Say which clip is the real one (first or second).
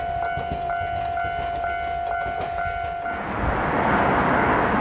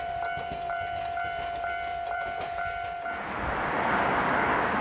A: first